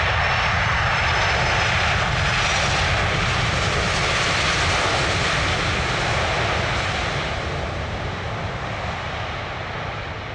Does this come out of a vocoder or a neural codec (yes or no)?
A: no